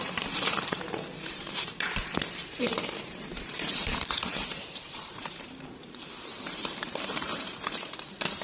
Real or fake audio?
fake